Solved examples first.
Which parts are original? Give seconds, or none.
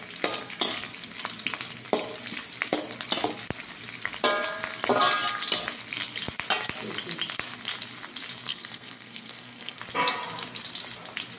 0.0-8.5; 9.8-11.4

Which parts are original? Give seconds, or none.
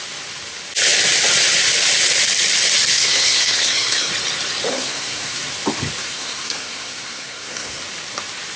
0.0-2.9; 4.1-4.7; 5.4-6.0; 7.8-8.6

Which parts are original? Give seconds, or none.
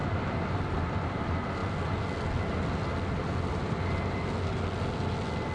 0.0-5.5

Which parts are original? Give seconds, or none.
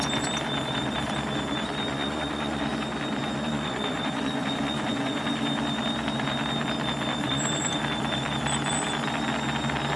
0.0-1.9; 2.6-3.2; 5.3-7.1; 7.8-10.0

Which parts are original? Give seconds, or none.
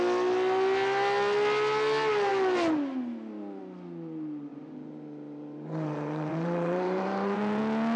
0.0-4.5; 7.6-8.0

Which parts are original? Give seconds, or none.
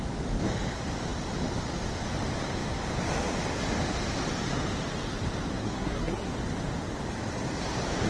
0.0-5.5; 6.3-8.1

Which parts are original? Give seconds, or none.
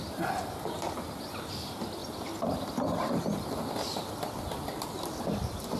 0.0-2.0; 5.2-5.8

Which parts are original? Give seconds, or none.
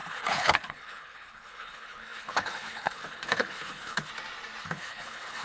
4.1-4.6